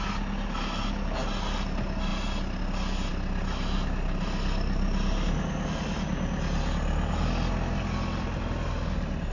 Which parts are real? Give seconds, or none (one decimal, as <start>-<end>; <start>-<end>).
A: 0.0-9.3